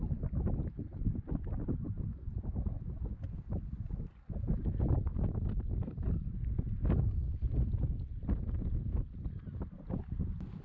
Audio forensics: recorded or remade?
recorded